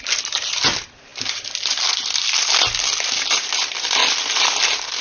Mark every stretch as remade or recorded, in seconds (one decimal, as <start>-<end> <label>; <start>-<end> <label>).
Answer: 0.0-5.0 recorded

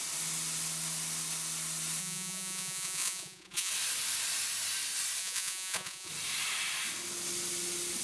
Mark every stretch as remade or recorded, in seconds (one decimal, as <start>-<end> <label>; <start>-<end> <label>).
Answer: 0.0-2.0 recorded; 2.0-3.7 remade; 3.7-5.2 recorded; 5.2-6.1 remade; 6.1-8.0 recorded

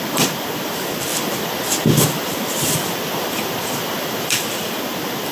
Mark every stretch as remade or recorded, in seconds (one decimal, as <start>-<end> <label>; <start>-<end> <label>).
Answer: 0.0-5.3 recorded